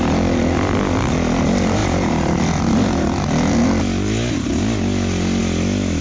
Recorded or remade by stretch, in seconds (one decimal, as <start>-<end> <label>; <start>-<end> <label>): 0.0-6.0 recorded